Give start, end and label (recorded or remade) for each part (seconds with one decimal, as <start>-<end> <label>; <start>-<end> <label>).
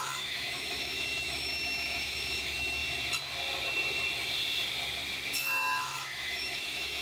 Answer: 0.0-2.8 remade; 2.8-5.4 recorded; 5.4-7.0 remade